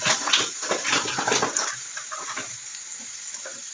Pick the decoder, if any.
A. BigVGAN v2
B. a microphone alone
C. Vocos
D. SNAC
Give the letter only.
A